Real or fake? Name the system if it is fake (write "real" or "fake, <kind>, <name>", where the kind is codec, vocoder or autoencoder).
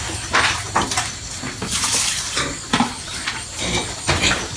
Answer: real